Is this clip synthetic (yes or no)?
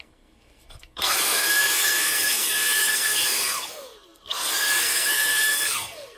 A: yes